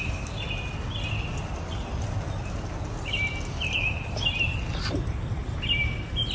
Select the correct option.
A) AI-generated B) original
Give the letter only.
B